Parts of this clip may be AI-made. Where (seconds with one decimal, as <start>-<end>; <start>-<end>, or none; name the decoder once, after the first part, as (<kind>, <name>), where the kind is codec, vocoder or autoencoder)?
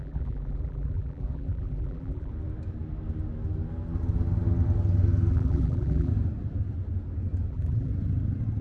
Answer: 0.0-2.3 (vocoder, BigVGAN v2); 5.3-6.1; 7.5-7.9